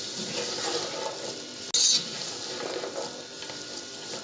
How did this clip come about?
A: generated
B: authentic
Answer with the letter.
B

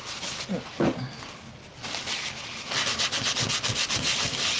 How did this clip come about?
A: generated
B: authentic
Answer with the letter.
B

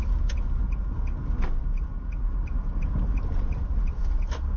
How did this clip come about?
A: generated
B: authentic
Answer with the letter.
B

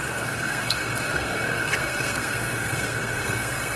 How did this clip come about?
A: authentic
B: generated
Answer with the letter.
B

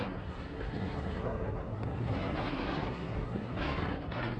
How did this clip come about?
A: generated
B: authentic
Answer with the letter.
A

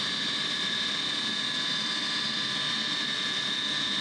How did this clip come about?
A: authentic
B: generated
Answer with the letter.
A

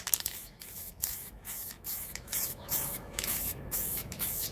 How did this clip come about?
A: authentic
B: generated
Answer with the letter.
B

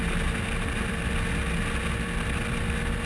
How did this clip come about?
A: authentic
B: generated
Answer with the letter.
A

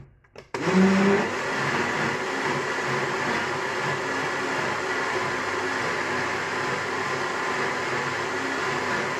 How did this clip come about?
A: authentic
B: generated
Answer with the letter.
A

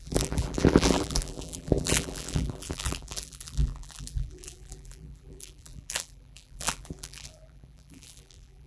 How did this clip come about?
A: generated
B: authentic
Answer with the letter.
A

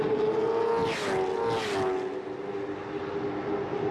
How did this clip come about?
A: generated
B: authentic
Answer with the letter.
B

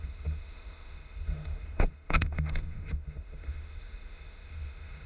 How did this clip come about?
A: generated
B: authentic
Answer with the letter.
A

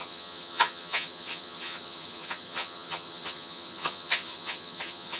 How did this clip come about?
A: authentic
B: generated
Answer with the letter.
B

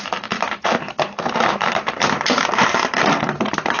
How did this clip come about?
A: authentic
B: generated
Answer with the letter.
B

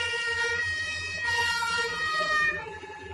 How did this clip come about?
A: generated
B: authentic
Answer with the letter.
A